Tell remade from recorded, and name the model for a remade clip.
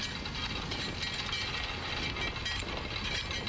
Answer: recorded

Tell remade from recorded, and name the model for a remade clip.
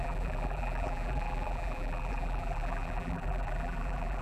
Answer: remade, vocoder, BigVGAN v2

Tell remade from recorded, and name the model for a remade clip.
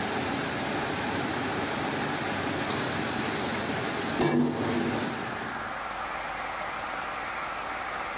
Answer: recorded